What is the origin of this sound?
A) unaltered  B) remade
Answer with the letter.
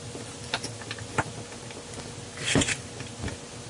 A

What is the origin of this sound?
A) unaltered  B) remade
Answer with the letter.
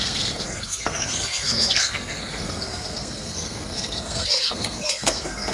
B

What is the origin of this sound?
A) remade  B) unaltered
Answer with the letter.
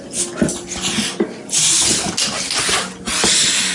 B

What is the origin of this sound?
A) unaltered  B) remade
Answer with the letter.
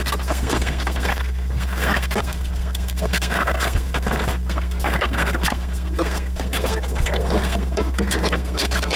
B